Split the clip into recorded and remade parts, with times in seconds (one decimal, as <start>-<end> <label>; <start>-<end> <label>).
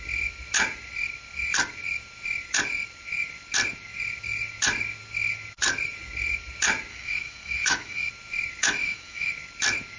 0.0-6.9 recorded; 6.9-8.1 remade; 8.1-8.6 recorded; 8.6-9.3 remade; 9.3-10.0 recorded